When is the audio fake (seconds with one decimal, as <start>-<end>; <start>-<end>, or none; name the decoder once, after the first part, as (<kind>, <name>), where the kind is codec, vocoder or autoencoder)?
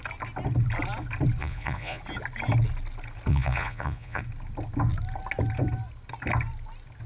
1.4-2.0 (vocoder, Vocos); 3.3-4.2